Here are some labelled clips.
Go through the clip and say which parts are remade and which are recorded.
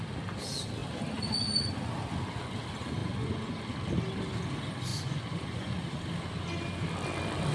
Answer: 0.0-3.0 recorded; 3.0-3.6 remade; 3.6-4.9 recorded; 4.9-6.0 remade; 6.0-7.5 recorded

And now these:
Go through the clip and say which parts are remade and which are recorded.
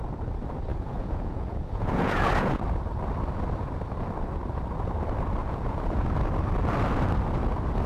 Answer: 0.0-0.7 recorded; 0.7-2.6 remade; 2.6-5.4 recorded; 5.4-6.0 remade; 6.0-7.9 recorded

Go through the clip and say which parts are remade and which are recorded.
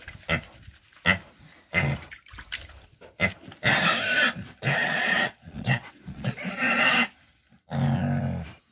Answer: 0.0-4.8 recorded; 4.8-6.5 remade; 6.5-8.7 recorded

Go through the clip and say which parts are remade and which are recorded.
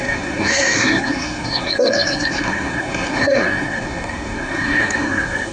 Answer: 0.0-5.5 remade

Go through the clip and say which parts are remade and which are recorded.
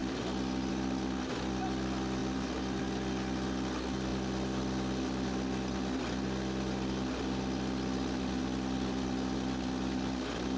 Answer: 0.0-10.6 recorded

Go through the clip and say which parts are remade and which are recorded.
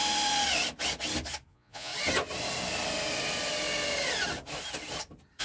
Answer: 0.0-1.5 recorded; 1.5-1.9 remade; 1.9-5.4 recorded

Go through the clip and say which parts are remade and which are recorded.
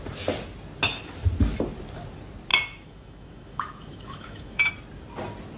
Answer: 0.0-2.5 recorded; 2.5-4.7 remade; 4.7-5.6 recorded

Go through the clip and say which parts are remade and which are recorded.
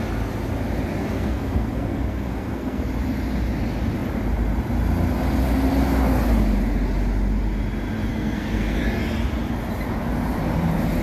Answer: 0.0-1.0 recorded; 1.0-2.9 remade; 2.9-8.1 recorded; 8.1-8.8 remade; 8.8-11.0 recorded